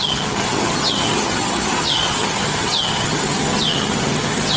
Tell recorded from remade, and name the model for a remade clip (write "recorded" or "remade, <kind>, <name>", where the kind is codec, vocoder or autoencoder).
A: remade, vocoder, HiFi-GAN